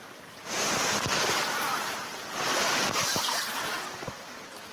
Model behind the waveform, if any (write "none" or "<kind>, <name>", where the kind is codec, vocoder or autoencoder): vocoder, BigVGAN v2